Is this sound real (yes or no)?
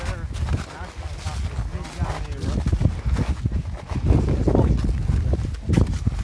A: yes